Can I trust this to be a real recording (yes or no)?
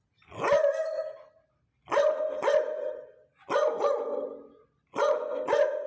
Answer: yes